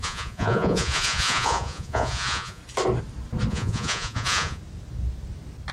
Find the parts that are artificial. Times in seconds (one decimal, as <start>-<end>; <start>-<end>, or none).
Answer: 0.0-2.6; 3.5-4.6